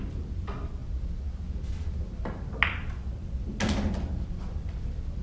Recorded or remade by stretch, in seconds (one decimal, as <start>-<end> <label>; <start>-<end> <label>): 0.0-5.2 recorded